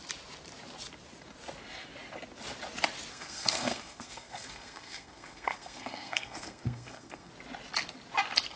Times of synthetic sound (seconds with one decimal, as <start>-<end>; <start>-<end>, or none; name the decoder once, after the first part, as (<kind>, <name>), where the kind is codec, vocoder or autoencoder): 3.1-7.3 (codec, SNAC)